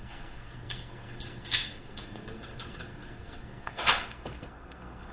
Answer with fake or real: fake